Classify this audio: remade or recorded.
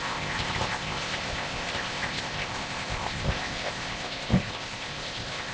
remade